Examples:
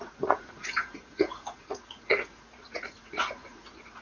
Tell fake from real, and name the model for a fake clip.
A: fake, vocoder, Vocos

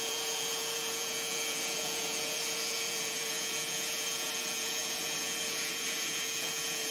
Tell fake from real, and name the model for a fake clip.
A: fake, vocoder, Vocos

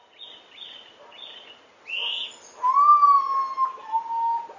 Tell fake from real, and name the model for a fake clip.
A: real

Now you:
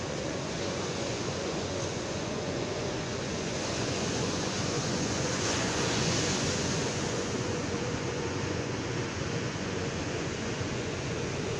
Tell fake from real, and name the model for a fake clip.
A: fake, vocoder, Vocos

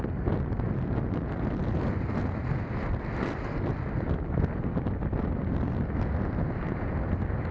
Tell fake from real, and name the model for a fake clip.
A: real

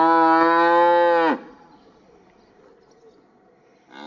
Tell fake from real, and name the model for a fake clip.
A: real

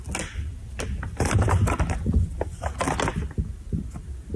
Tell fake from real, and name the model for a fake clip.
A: real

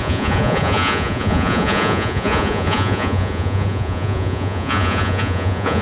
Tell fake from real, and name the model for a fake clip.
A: fake, vocoder, Vocos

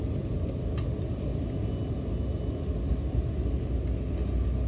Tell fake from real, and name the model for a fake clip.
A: real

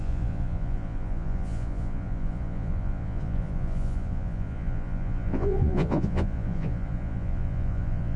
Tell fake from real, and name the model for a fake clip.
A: fake, vocoder, Vocos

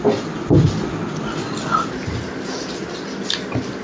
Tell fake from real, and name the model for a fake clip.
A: real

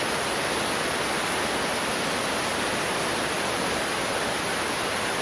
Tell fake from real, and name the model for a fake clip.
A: real